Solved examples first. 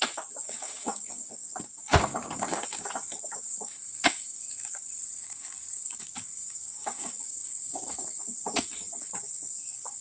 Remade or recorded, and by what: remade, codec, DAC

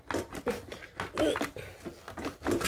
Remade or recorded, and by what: recorded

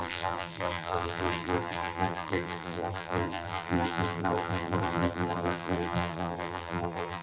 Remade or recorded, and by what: remade, vocoder, BigVGAN v2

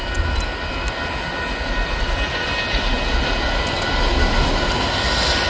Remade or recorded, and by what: recorded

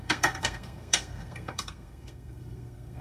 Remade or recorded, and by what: remade, codec, SNAC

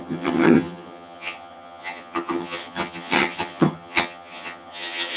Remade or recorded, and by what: remade, vocoder, HiFi-GAN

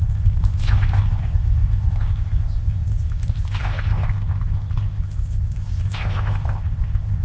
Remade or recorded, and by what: remade, codec, ZipCodec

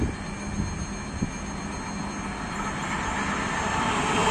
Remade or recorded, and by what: recorded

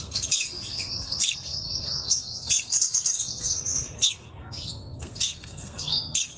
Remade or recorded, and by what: remade, codec, SNAC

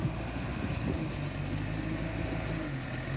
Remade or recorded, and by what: recorded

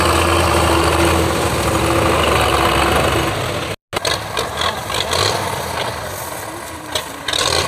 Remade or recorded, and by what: recorded